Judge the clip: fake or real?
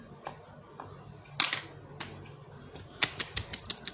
real